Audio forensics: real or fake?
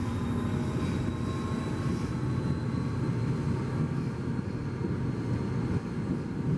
real